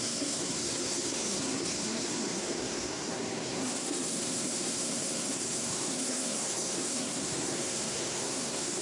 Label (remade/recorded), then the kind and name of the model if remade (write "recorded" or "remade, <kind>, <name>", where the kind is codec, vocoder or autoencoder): remade, codec, SNAC